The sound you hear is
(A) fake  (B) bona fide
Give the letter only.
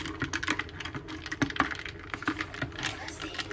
B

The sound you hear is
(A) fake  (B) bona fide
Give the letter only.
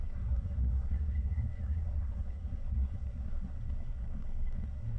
A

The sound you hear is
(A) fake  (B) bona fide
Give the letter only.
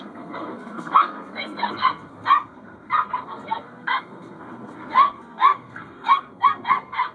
A